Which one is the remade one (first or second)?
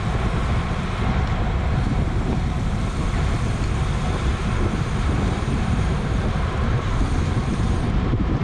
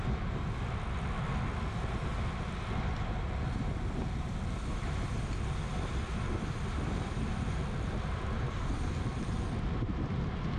first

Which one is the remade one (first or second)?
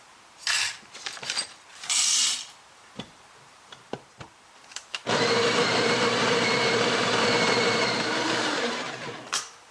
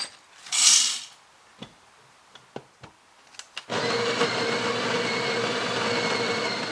first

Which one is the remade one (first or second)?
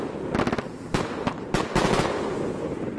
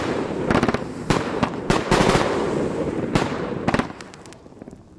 second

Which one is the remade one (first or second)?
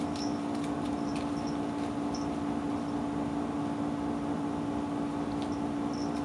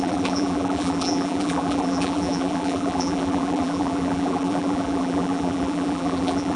second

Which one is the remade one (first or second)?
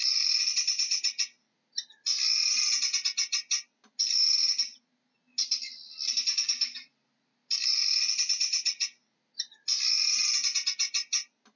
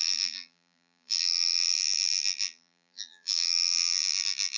second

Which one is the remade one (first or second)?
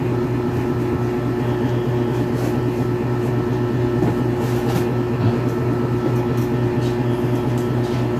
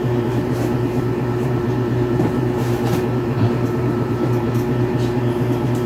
second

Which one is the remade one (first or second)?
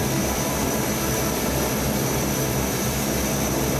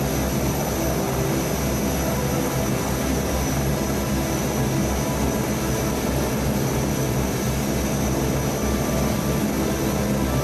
first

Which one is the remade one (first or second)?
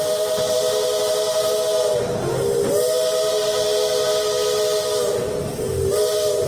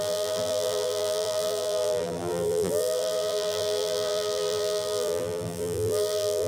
second